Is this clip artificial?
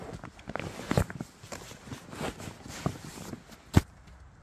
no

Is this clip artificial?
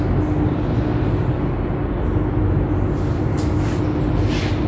no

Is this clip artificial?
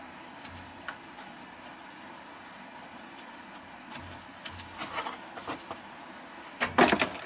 no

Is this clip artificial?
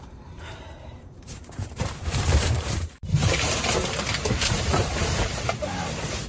yes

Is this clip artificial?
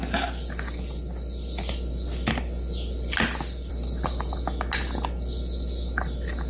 no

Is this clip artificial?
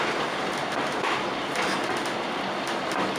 no